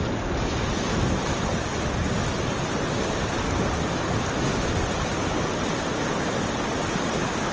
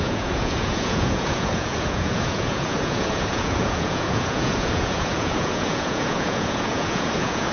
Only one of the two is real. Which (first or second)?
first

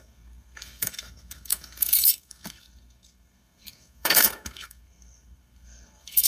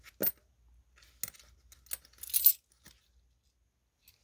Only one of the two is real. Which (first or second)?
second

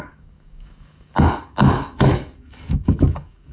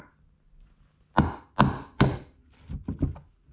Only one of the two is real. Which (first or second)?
second